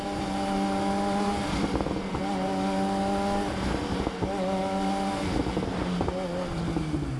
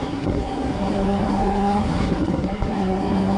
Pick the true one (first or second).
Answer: first